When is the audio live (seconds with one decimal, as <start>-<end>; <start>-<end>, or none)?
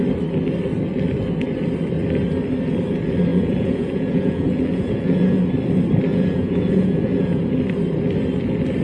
0.0-3.3; 5.4-6.1; 7.4-8.8